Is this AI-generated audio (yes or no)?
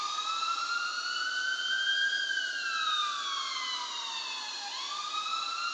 no